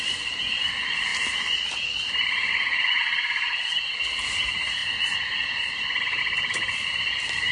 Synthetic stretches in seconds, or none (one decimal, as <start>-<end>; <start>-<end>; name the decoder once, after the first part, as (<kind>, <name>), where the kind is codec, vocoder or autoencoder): none